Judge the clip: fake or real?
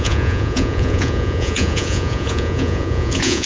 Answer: fake